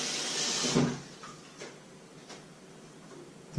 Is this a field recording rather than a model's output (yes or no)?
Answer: yes